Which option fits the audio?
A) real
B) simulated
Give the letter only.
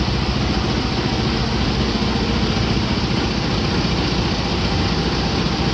A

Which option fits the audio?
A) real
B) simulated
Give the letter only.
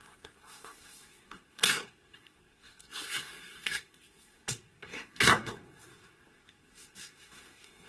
B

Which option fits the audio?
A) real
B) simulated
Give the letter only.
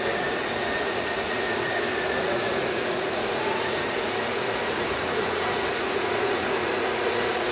B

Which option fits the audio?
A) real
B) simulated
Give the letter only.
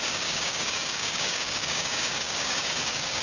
B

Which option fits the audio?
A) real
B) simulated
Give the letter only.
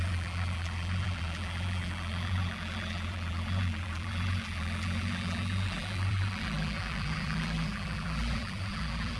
B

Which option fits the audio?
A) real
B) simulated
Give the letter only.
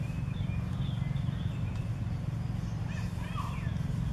A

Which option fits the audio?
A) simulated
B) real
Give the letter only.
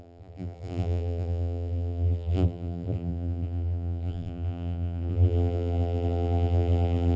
A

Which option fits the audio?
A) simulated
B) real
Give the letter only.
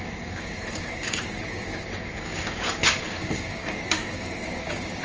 A